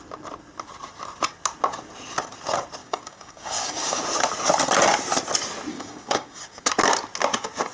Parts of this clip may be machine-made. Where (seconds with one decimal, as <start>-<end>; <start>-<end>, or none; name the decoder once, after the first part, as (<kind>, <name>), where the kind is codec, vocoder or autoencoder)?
2.8-4.0 (codec, DAC); 5.7-6.7